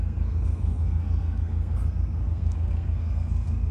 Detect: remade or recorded remade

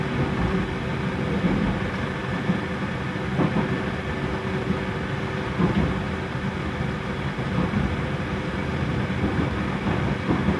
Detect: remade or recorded recorded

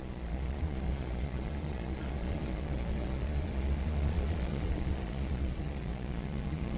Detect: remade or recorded remade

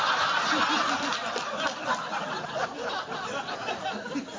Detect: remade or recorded recorded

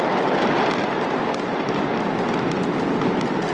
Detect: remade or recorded recorded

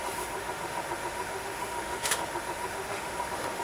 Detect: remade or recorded remade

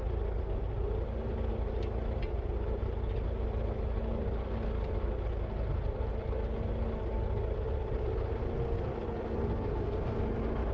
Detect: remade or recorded recorded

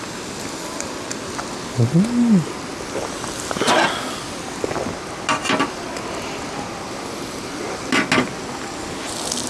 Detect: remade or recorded recorded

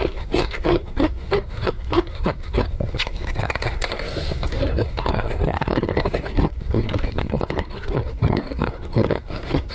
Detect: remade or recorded remade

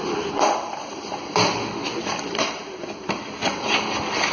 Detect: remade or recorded recorded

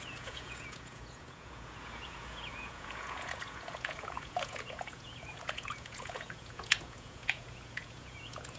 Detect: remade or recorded remade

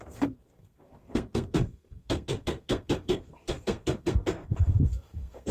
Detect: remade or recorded remade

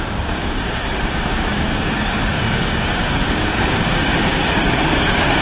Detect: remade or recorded remade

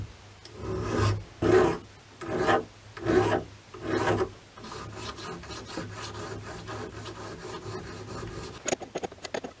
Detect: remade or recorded recorded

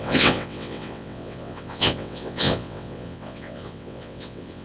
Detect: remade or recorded remade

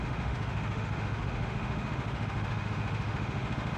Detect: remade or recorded remade